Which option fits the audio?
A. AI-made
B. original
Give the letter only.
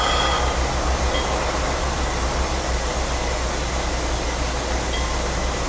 B